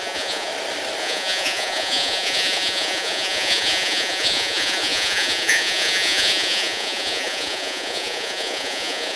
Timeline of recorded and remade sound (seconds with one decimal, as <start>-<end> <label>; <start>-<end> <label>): 0.0-0.5 remade; 0.5-1.0 recorded; 1.0-9.2 remade

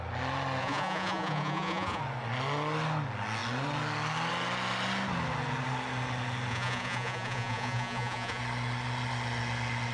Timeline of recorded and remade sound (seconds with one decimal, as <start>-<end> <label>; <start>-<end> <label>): 0.0-0.6 recorded; 0.6-2.0 remade; 2.0-6.5 recorded; 6.5-8.4 remade; 8.4-9.9 recorded

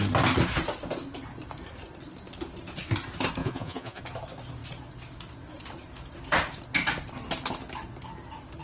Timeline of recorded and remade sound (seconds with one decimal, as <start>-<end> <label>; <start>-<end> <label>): 0.0-3.4 recorded; 3.4-4.0 remade; 4.0-8.6 recorded